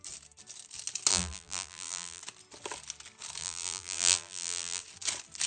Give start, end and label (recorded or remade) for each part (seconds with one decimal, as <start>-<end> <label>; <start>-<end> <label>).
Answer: 0.0-1.1 recorded; 1.1-2.2 remade; 2.2-3.4 recorded; 3.4-4.8 remade; 4.8-5.5 recorded